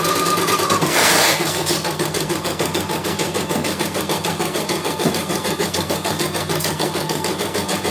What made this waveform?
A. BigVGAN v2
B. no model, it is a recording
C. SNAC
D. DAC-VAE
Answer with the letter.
C